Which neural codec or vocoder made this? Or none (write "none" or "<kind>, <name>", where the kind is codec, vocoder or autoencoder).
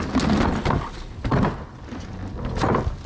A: none